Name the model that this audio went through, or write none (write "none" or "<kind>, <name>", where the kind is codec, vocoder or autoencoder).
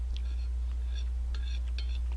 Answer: none